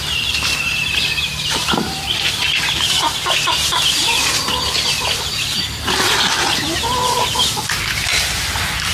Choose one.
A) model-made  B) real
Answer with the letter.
B